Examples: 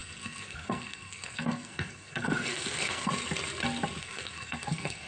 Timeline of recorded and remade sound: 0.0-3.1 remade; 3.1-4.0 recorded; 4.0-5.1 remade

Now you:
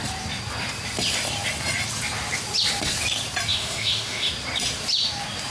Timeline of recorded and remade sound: 0.0-3.5 recorded; 3.5-4.3 remade; 4.3-5.5 recorded

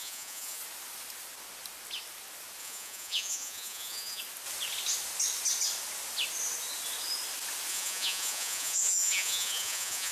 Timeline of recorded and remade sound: 0.0-0.6 remade; 0.6-2.6 recorded; 2.6-4.2 remade; 4.2-7.7 recorded; 7.7-10.1 remade

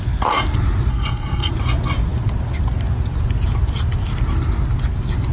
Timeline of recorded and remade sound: 0.0-0.9 recorded; 0.9-1.5 remade; 1.5-5.3 recorded

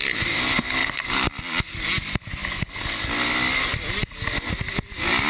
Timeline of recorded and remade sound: 0.0-0.8 recorded; 0.8-1.4 remade; 1.4-5.3 recorded

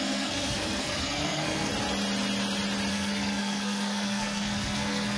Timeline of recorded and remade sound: 0.0-1.7 remade; 1.7-2.9 recorded; 2.9-5.2 remade

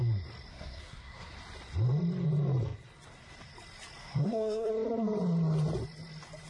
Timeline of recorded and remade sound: 0.0-0.5 recorded; 0.5-1.3 remade; 1.3-4.0 recorded; 4.0-4.7 remade; 4.7-6.5 recorded

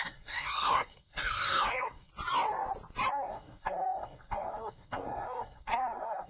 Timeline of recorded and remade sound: 0.0-2.1 remade; 2.1-3.1 recorded; 3.1-6.3 remade